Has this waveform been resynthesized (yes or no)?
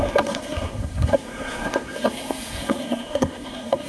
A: yes